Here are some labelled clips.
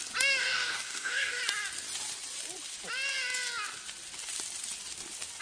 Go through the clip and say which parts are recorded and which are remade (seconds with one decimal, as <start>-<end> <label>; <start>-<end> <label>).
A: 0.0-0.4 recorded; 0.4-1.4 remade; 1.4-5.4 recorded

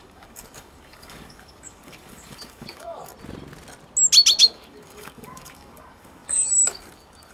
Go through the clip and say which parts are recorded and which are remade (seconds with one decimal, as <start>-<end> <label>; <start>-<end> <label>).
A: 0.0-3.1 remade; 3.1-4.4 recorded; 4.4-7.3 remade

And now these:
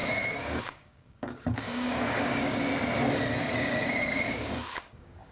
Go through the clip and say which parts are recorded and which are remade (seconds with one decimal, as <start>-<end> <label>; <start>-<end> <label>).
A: 0.0-2.7 remade; 2.7-3.4 recorded; 3.4-5.3 remade

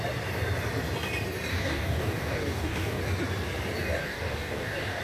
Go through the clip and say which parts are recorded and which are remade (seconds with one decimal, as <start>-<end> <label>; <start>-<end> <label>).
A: 0.0-1.5 recorded; 1.5-3.0 remade; 3.0-4.0 recorded; 4.0-5.0 remade